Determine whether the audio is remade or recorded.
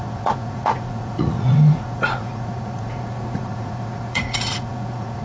remade